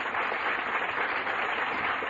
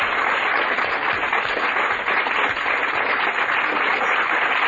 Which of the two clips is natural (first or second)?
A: second